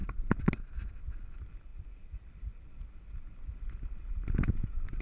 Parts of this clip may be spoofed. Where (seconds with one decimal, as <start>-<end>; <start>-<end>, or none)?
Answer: 0.0-0.9